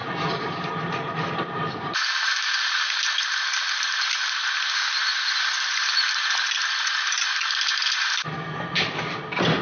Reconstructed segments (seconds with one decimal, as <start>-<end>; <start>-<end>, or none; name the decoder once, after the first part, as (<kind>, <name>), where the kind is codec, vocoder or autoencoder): 0.0-3.2 (vocoder, BigVGAN v2)